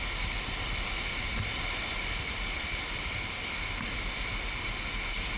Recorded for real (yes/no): yes